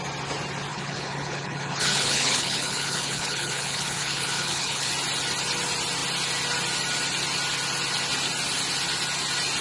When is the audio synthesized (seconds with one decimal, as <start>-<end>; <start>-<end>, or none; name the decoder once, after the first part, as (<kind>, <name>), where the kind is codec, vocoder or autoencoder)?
0.7-4.9 (codec, HILCodec)